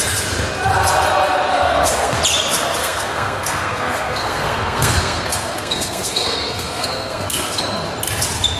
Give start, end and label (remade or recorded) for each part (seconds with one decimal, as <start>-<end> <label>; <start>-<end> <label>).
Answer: 0.0-1.5 recorded; 1.5-2.2 remade; 2.2-2.8 recorded; 2.8-7.6 remade; 7.6-8.6 recorded